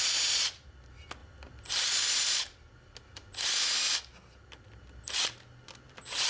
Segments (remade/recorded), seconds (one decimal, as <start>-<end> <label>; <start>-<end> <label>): 0.0-6.3 recorded